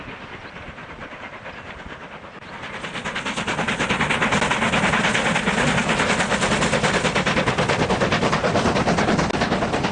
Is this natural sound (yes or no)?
yes